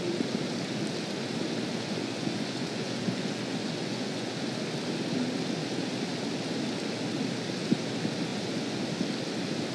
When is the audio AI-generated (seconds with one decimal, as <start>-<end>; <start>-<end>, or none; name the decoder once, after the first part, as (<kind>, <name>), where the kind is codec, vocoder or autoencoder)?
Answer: 1.7-4.3 (vocoder, Vocos); 8.3-8.8